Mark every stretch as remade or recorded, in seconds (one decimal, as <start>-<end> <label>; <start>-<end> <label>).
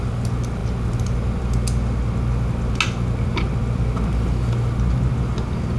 0.0-5.8 recorded